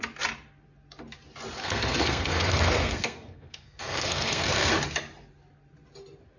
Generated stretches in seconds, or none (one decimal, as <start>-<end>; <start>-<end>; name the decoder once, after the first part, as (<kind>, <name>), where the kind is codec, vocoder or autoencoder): 1.6-4.7 (codec, SNAC)